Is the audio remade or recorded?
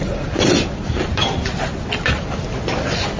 recorded